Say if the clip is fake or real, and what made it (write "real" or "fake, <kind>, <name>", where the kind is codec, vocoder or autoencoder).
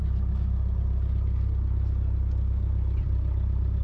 real